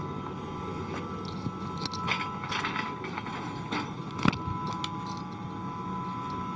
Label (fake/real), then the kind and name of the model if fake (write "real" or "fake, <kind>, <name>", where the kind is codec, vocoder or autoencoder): real